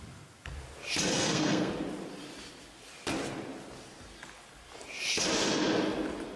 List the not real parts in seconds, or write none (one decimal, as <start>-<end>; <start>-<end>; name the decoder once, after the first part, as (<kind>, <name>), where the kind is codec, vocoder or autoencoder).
1.1-1.7 (codec, SNAC)

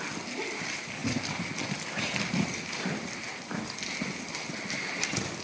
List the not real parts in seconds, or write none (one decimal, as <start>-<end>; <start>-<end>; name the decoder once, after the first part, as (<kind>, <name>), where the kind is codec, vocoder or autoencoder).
none